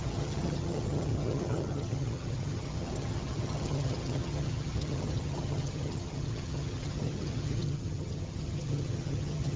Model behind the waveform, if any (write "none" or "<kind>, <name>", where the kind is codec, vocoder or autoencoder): vocoder, HiFi-GAN